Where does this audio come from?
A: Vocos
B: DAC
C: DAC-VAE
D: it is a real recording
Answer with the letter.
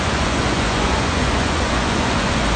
A